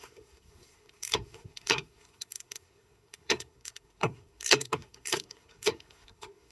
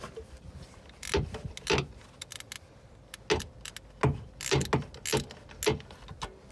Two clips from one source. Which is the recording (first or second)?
second